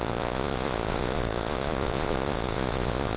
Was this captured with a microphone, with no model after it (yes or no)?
no